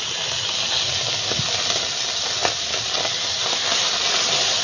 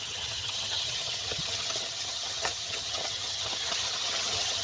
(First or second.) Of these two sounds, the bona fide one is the first